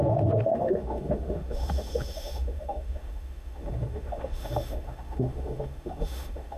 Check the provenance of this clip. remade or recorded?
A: remade